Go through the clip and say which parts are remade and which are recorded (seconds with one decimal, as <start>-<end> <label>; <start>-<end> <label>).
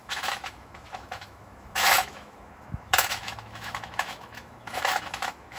0.0-5.6 remade